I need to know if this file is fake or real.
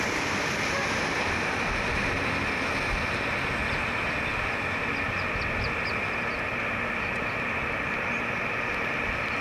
real